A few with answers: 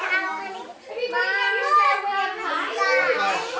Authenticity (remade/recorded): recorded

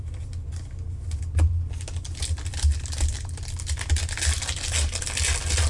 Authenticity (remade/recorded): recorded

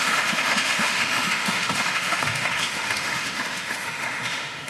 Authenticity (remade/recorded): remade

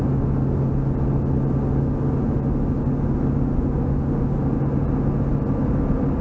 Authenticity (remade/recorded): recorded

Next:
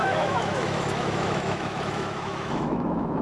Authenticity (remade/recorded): remade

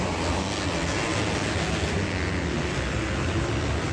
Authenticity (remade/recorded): recorded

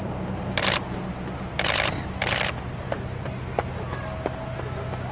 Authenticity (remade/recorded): recorded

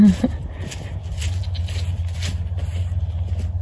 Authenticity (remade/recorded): recorded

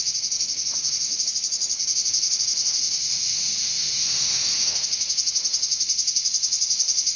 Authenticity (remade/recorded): remade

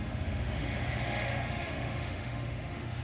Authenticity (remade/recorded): remade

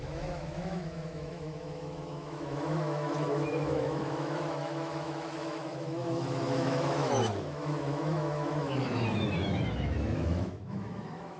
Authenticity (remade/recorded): remade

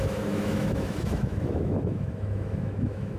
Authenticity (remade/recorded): remade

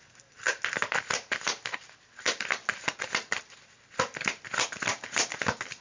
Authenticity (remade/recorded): recorded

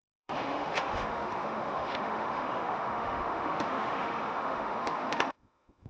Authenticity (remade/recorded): remade